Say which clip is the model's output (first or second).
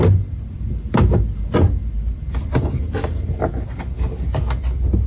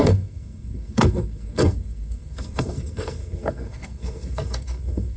second